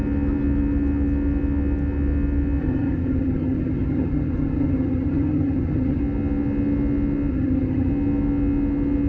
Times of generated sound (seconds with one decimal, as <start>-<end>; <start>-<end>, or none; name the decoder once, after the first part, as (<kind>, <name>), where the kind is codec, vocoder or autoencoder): 2.6-6.0 (vocoder, HiFi-GAN); 7.3-7.9